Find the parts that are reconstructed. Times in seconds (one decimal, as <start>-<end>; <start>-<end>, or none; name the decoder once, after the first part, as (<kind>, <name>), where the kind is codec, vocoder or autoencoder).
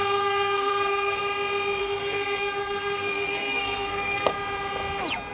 0.0-1.2 (codec, SNAC); 1.8-4.3